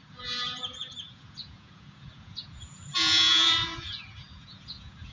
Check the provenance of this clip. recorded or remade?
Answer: remade